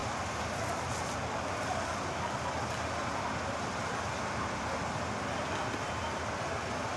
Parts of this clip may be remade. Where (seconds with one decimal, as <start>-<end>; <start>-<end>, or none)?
none